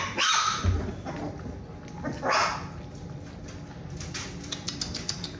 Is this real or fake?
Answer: real